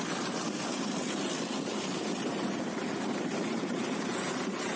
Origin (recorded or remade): recorded